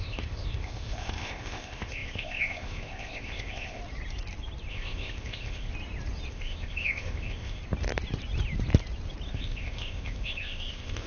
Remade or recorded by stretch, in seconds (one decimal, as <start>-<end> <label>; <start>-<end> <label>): 0.0-3.8 remade; 3.8-4.7 recorded; 4.7-5.7 remade; 5.7-6.3 recorded; 6.3-7.6 remade; 7.6-9.3 recorded; 9.3-11.1 remade